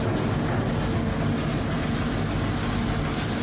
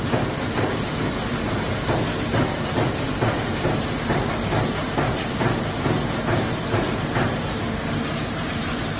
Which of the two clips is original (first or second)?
first